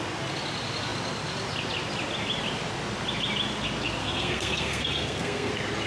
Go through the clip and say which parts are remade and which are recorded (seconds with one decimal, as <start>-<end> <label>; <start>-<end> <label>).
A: 0.0-4.0 recorded; 4.0-5.5 remade; 5.5-5.9 recorded